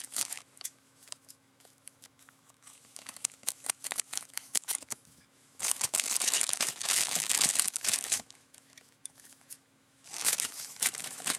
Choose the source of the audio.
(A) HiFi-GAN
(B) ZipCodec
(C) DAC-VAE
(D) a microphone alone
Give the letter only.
C